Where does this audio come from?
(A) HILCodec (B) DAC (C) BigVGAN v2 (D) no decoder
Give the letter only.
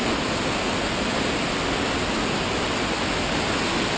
D